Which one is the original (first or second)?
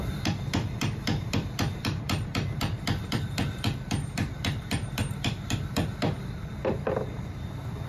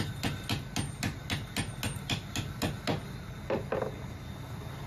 second